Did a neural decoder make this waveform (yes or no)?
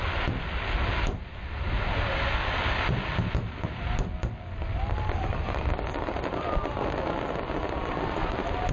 no